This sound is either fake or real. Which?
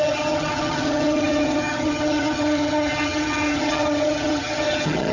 fake